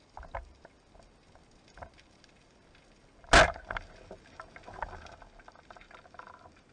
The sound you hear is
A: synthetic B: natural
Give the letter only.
B